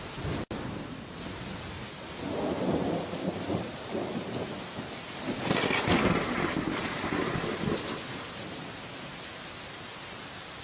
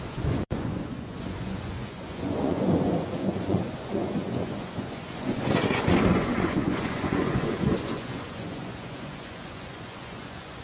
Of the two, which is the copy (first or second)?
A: second